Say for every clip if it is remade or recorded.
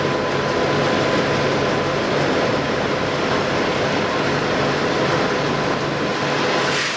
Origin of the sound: recorded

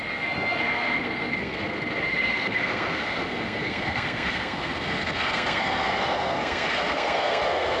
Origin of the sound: remade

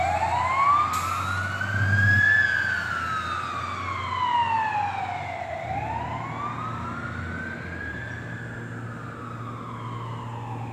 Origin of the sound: recorded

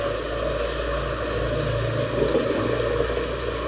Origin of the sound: recorded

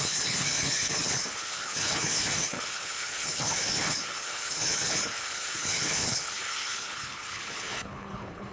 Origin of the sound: remade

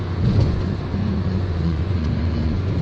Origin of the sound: remade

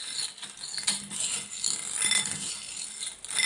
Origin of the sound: recorded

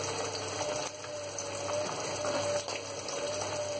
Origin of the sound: recorded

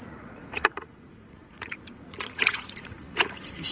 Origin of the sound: remade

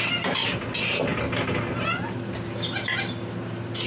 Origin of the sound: recorded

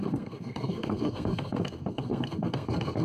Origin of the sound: remade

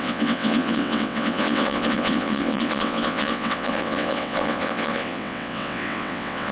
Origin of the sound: remade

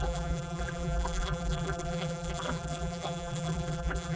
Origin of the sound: remade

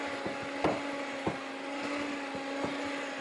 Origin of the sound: recorded